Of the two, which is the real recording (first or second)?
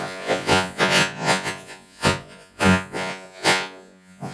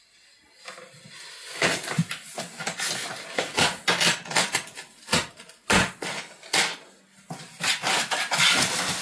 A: second